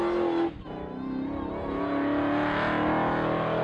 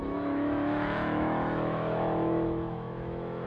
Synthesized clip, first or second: second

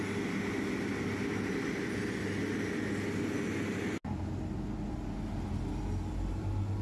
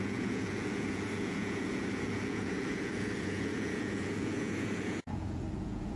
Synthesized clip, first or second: second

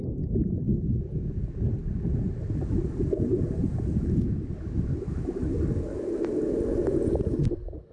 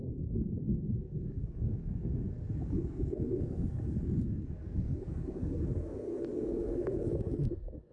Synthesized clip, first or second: second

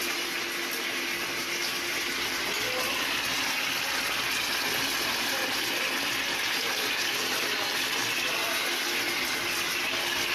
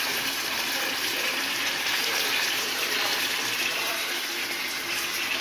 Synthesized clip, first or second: second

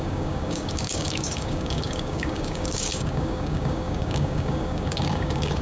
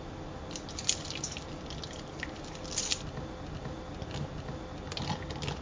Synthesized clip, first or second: first